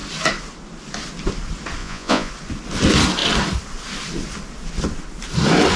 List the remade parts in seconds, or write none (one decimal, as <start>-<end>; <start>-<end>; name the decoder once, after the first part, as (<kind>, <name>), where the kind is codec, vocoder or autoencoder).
1.8-2.3 (vocoder, Vocos)